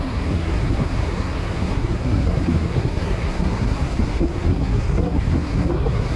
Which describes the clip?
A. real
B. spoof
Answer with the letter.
B